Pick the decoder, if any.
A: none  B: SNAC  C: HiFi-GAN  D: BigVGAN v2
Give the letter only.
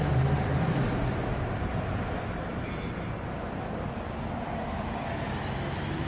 D